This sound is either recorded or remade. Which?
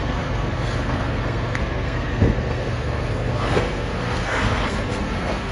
remade